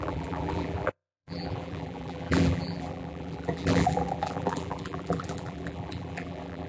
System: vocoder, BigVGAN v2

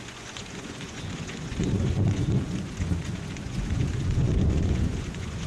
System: vocoder, Vocos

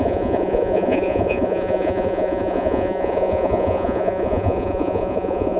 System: vocoder, Vocos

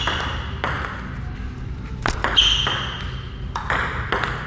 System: none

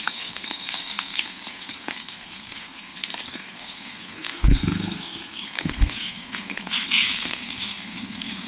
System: codec, SNAC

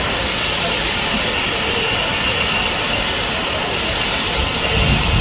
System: none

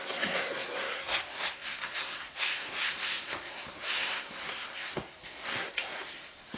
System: codec, SNAC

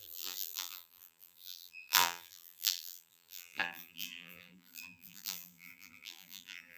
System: vocoder, BigVGAN v2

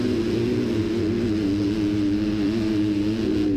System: none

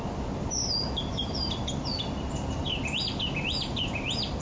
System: none